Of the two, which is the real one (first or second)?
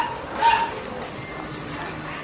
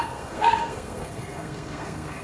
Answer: first